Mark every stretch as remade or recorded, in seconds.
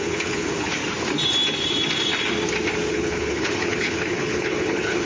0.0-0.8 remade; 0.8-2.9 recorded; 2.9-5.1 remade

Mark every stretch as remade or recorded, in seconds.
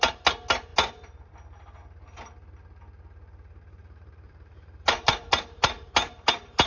0.0-3.8 recorded; 3.8-5.1 remade; 5.1-6.7 recorded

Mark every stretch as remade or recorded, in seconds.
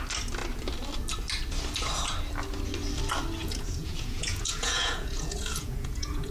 0.0-3.4 recorded; 3.4-6.3 remade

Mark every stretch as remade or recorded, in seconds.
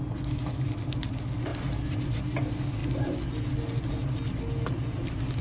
0.0-5.4 recorded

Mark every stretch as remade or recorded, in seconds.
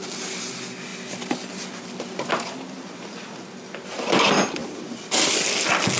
0.0-6.0 recorded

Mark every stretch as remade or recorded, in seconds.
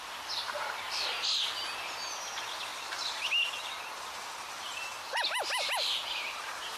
0.0-6.8 recorded